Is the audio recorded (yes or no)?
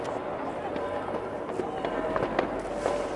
no